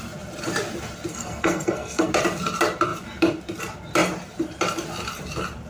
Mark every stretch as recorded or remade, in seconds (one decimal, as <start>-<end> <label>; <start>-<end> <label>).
0.0-1.1 recorded; 1.1-2.1 remade; 2.1-5.7 recorded